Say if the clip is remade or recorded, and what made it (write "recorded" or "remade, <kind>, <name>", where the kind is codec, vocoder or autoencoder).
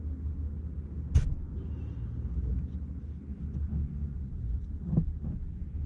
recorded